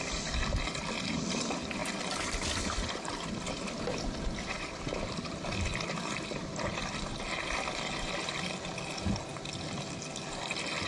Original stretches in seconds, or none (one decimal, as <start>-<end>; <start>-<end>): 0.0-1.8; 5.2-5.7; 7.2-10.9